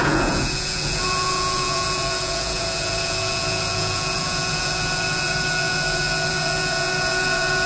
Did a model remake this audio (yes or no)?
yes